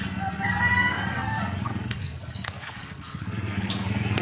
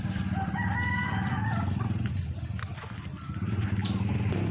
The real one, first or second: second